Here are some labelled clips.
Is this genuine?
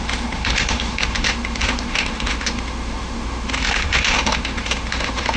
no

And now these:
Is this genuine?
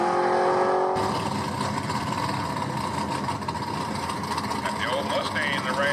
yes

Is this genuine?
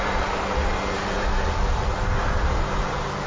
yes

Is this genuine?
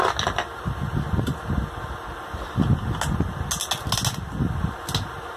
yes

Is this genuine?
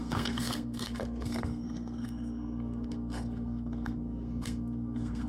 no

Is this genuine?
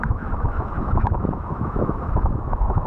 no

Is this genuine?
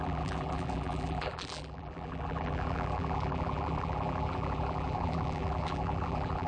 no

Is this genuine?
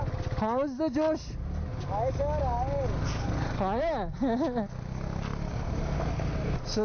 yes